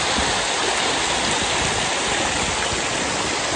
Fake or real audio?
real